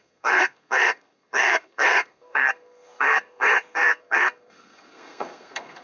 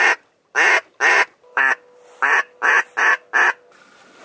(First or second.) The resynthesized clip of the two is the first